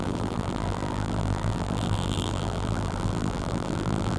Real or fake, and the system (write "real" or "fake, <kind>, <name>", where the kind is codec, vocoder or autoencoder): fake, vocoder, BigVGAN v2